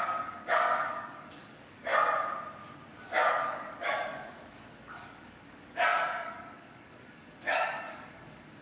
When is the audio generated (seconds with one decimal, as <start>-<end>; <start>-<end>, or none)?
0.0-1.9; 3.3-8.6